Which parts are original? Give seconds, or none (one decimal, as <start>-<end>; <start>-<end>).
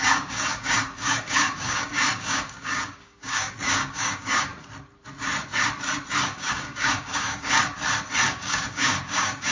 4.5-6.1; 7.7-8.3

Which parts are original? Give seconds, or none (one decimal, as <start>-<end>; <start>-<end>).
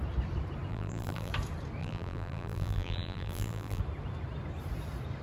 0.0-0.7; 1.3-1.8; 3.8-5.2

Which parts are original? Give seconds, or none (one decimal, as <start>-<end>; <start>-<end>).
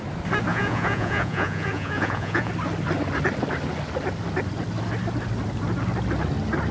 0.0-0.5; 2.5-6.7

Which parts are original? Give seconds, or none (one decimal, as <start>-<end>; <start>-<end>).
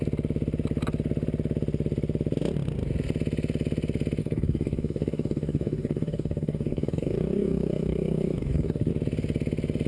0.0-4.2; 8.9-9.9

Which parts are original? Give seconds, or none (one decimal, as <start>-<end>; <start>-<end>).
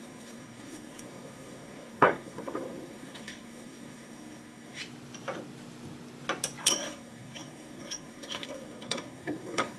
4.8-6.6